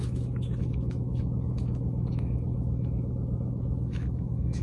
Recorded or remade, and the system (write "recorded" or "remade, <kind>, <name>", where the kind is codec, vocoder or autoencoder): remade, autoencoder, DAC-VAE